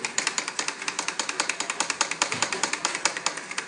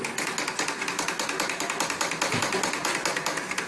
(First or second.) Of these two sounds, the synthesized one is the first